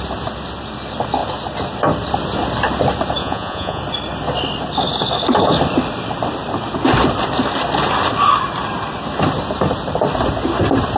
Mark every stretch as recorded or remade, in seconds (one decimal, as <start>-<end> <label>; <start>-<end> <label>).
0.0-3.2 recorded; 3.2-3.8 remade; 3.8-11.0 recorded

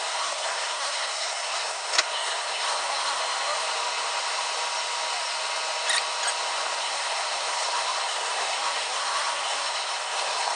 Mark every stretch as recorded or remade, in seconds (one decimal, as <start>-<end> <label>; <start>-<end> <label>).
0.0-3.2 remade; 3.2-6.8 recorded; 6.8-10.6 remade